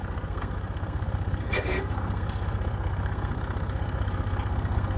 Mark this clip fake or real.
fake